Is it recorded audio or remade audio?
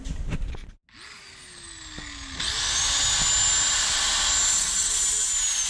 recorded